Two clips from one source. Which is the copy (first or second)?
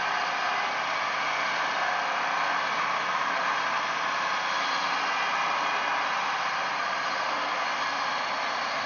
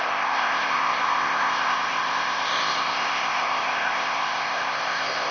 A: second